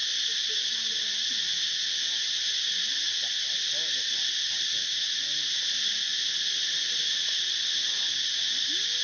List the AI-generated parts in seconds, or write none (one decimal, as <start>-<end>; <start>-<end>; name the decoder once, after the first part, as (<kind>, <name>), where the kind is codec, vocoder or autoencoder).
none